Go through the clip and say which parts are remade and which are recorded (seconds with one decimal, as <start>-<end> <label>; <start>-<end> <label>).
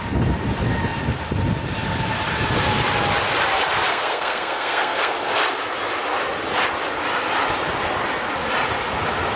0.0-3.9 recorded; 3.9-5.1 remade; 5.1-9.4 recorded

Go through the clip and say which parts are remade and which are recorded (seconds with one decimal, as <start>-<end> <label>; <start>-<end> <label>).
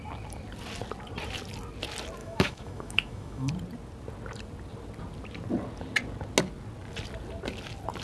0.0-2.2 recorded; 2.2-3.5 remade; 3.5-8.0 recorded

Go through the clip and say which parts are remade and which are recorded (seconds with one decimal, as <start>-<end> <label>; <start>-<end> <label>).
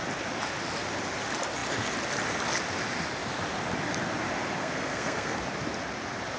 0.0-4.6 recorded; 4.6-5.4 remade; 5.4-6.4 recorded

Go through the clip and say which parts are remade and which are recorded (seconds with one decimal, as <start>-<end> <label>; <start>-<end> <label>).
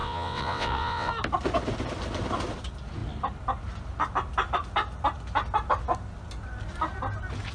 0.0-1.1 remade; 1.1-7.5 recorded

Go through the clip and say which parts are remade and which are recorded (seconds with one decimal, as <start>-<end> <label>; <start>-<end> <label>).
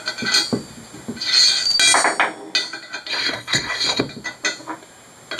0.0-3.1 recorded; 3.1-4.0 remade; 4.0-5.4 recorded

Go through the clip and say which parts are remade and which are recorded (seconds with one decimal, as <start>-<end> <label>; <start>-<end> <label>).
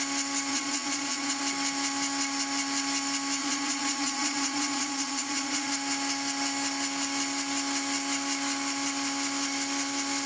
0.0-0.5 recorded; 0.5-1.4 remade; 1.4-3.4 recorded; 3.4-5.7 remade; 5.7-10.3 recorded